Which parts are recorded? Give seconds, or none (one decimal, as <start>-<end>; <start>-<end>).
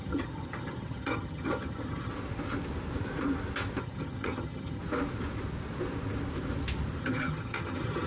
2.1-3.8; 4.8-7.0